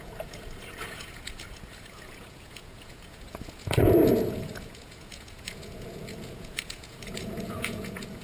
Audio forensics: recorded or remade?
remade